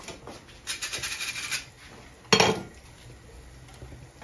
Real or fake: real